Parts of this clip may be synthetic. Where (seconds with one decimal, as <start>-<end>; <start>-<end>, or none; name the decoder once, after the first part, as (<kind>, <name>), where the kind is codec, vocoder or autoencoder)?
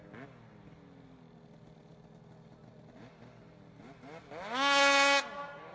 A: none